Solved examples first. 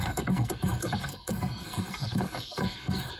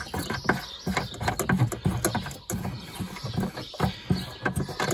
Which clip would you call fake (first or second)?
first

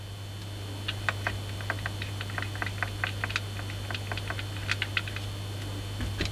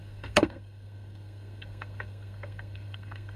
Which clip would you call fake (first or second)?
second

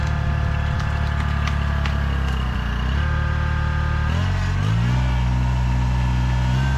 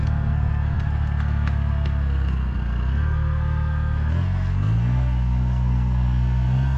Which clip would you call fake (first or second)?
second